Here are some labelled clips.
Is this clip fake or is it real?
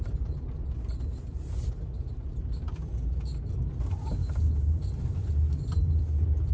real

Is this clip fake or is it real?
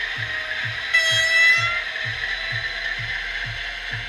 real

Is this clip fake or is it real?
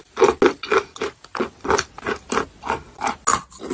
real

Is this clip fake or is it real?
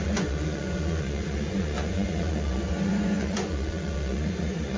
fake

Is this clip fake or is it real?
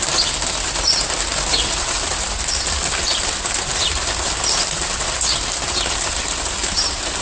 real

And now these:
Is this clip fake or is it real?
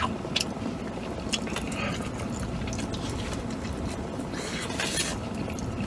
real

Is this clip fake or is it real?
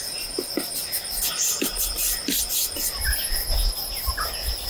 real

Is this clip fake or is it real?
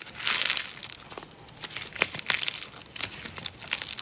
real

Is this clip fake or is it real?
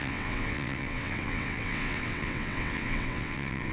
fake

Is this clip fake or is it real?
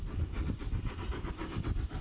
real